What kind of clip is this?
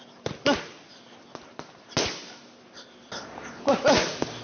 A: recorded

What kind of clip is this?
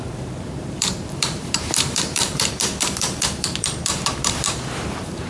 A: remade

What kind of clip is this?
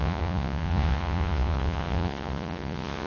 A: remade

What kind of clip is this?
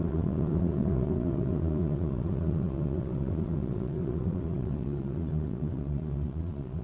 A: remade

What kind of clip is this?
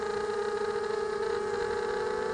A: recorded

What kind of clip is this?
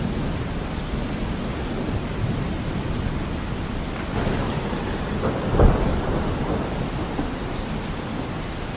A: recorded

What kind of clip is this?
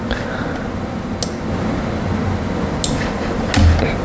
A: recorded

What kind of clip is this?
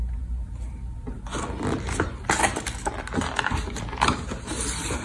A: recorded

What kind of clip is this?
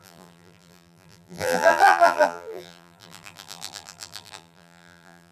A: remade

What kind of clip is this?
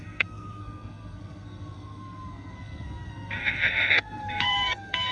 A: remade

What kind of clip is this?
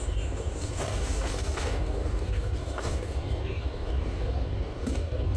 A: remade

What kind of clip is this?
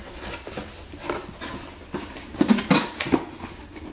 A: recorded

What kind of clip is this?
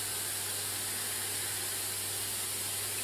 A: recorded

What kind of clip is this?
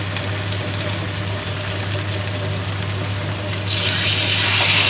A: recorded